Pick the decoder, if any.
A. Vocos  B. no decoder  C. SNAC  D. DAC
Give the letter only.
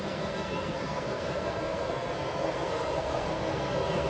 C